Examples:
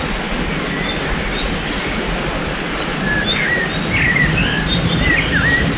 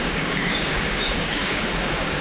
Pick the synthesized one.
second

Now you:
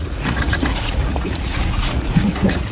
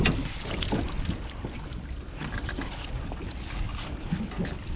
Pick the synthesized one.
first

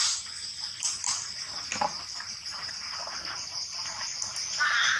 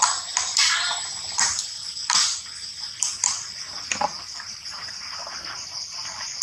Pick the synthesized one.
second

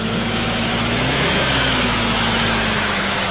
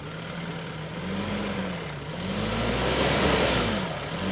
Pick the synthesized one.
first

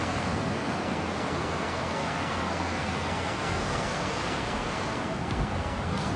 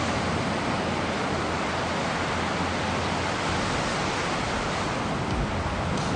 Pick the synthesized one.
first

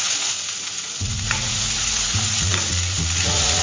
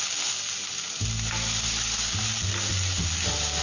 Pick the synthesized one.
first